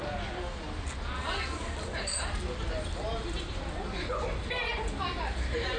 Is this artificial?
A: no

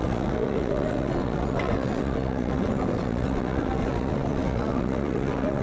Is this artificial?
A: yes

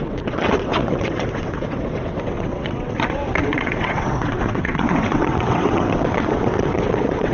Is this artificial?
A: yes